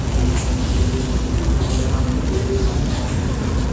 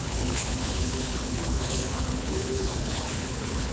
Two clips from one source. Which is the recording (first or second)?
first